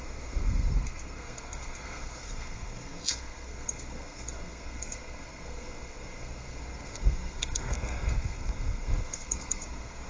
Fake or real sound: fake